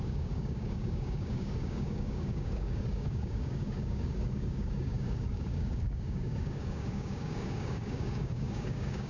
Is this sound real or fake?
fake